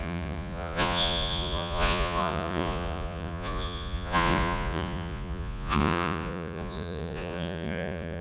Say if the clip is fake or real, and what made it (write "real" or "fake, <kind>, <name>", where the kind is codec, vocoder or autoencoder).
fake, vocoder, Vocos